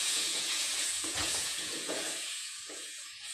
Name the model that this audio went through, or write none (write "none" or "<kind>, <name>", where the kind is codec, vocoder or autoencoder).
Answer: vocoder, Vocos